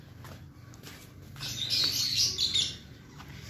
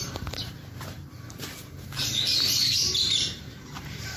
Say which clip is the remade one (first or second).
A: second